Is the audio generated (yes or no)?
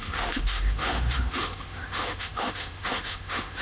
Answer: yes